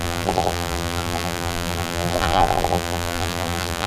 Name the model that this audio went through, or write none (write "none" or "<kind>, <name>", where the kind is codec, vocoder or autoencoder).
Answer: vocoder, BigVGAN v2